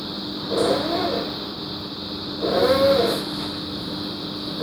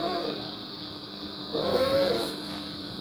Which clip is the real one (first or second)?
first